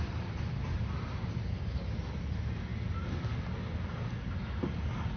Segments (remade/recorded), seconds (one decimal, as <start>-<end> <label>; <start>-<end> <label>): 0.0-5.2 recorded